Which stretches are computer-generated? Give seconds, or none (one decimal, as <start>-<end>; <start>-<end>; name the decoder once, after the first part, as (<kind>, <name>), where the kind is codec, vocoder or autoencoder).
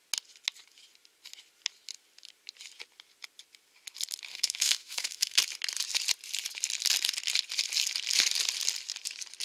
4.3-5.4 (autoencoder, DAC-VAE)